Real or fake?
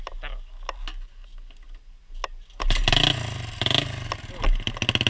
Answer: real